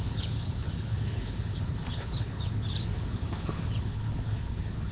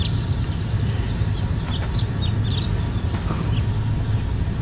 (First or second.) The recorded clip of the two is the second